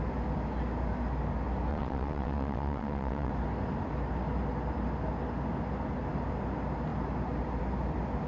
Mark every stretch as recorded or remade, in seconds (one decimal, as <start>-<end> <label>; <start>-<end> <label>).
0.0-1.7 recorded; 1.7-3.3 remade; 3.3-8.3 recorded